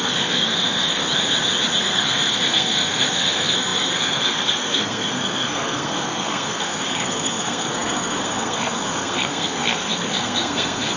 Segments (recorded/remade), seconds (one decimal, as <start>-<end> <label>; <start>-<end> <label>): 0.0-1.0 remade; 1.0-1.8 recorded; 1.8-11.0 remade